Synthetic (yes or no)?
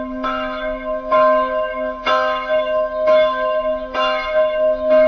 yes